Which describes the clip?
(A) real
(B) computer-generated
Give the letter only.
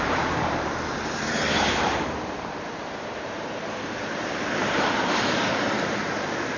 B